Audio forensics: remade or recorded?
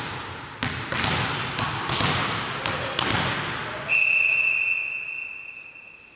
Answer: recorded